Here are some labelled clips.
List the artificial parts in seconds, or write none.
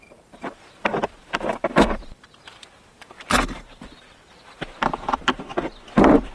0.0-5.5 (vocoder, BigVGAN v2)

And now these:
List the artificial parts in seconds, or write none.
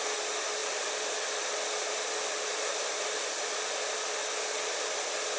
none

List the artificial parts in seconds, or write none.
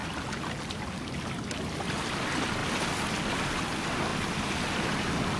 none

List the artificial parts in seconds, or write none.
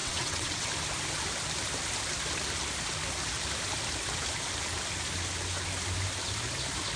0.0-0.7 (vocoder, WaveNeXt)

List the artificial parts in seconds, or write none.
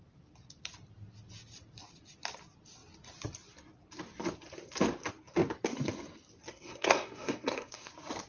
6.5-7.9 (codec, SNAC)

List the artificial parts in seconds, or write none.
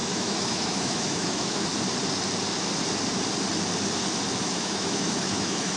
0.0-1.7 (autoencoder, DAC-VAE); 4.4-5.8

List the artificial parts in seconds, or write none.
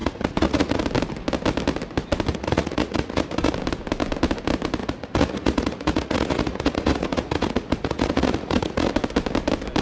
0.0-0.8 (vocoder, Vocos); 2.3-3.5; 4.8-8.9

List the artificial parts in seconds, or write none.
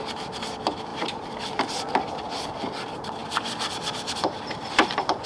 0.9-1.7 (vocoder, BigVGAN v2); 3.2-4.4